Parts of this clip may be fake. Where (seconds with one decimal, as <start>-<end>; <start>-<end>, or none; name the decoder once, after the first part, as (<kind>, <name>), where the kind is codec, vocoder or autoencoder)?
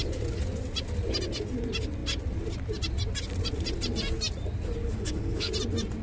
4.8-5.5 (codec, DAC)